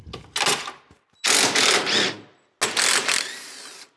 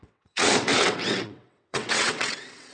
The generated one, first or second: second